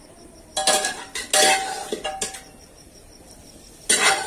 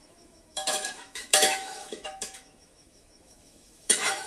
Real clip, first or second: first